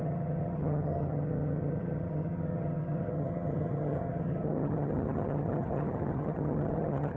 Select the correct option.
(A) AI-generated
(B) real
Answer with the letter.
A